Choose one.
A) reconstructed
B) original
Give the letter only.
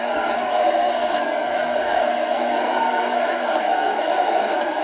A